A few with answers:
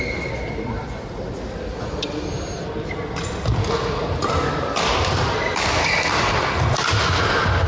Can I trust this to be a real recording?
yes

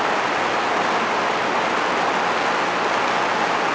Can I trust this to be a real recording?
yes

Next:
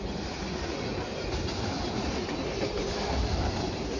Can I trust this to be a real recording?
yes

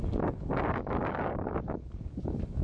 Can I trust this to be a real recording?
no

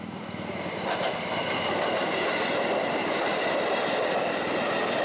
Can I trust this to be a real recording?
yes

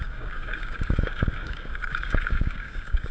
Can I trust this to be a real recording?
no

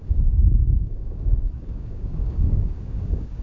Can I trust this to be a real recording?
no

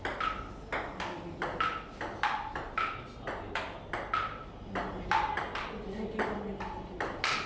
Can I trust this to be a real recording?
yes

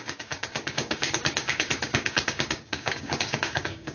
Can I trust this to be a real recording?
no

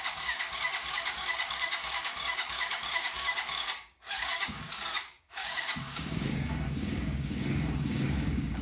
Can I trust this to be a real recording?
no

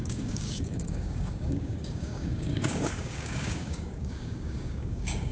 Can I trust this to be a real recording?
no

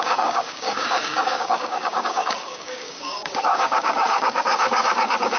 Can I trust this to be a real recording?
no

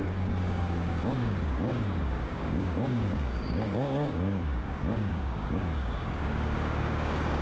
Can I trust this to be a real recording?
no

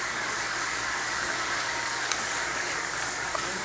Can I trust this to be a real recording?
no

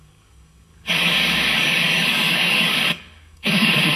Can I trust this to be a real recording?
no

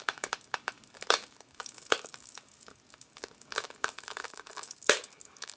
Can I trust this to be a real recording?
no